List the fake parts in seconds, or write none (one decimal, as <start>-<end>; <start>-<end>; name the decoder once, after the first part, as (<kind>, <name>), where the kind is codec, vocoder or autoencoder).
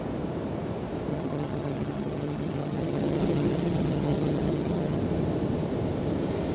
1.1-5.0 (vocoder, HiFi-GAN)